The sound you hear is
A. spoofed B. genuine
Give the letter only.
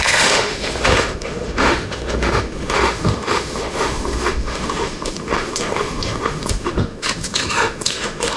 A